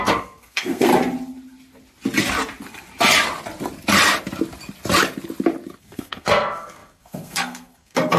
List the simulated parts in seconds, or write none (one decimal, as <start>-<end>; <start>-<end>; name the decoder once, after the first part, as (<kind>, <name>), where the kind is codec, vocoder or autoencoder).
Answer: 0.0-0.9 (codec, SNAC); 5.8-8.2